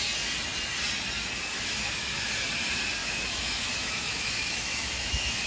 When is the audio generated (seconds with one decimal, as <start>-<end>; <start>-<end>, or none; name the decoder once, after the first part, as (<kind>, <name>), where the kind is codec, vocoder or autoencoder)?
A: 1.5-2.3 (autoencoder, DAC-VAE); 3.0-5.5